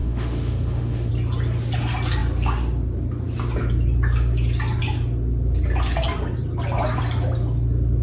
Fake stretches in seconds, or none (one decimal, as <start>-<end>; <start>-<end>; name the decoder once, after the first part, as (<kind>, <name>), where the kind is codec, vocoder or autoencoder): 0.0-1.1 (autoencoder, DAC-VAE)